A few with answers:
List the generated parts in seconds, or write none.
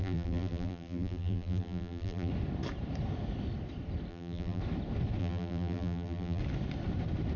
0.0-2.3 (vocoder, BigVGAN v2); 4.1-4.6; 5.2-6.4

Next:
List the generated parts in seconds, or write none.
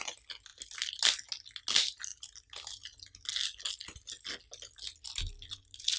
none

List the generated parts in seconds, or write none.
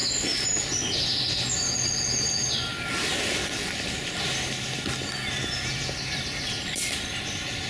none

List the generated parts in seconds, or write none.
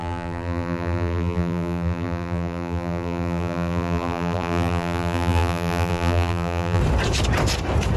0.0-6.8 (vocoder, BigVGAN v2)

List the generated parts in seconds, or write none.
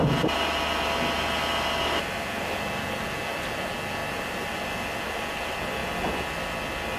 4.0-4.5 (vocoder, BigVGAN v2)